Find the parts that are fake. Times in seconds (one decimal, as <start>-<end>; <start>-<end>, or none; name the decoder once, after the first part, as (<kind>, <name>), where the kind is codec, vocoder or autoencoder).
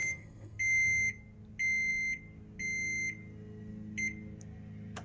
0.0-0.6 (codec, SNAC)